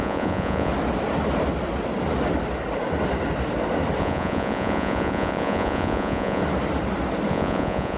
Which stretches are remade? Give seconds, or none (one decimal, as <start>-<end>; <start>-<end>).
0.0-0.7; 4.0-6.4; 7.3-8.0